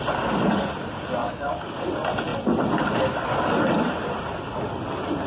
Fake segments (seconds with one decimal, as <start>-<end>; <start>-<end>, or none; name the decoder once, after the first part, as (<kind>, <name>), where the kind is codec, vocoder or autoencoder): 1.2-1.9 (codec, DAC)